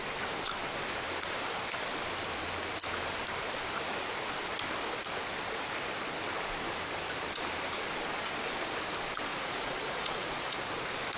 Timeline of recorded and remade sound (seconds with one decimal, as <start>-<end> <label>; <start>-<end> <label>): 0.0-9.3 recorded; 9.3-10.7 remade; 10.7-11.2 recorded